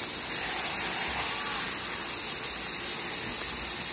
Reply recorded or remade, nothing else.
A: recorded